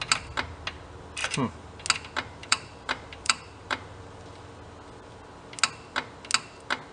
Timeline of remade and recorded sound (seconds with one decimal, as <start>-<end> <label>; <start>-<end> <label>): 0.0-1.2 recorded; 1.2-1.8 remade; 1.8-2.4 recorded; 2.4-4.5 remade; 4.5-6.9 recorded